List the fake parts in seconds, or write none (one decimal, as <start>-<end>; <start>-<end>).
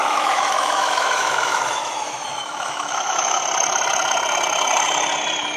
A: 0.0-3.4